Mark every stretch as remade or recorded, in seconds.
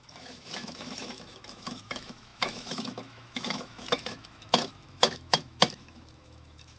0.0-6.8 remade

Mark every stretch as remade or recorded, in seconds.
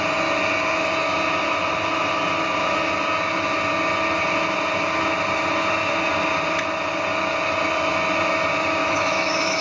0.0-8.8 recorded; 8.8-9.6 remade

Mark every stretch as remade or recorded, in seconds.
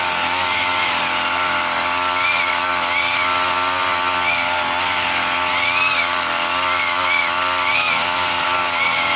0.0-9.2 recorded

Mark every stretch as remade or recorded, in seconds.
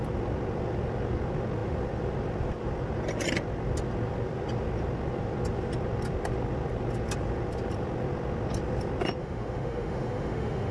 0.0-9.2 recorded; 9.2-10.7 remade